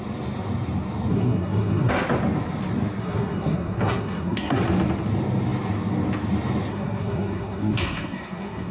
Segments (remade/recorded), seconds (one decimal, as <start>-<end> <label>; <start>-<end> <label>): 0.0-1.1 recorded; 1.1-1.9 remade; 1.9-3.0 recorded; 3.0-4.6 remade; 4.6-6.7 recorded; 6.7-8.7 remade